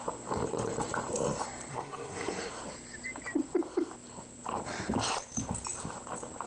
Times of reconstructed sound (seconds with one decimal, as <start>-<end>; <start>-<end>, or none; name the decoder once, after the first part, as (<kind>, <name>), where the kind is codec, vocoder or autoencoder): 1.7-2.5 (codec, SNAC)